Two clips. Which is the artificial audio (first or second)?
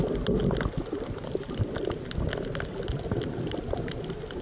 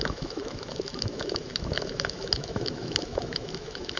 second